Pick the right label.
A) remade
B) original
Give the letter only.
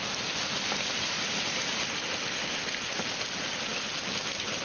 B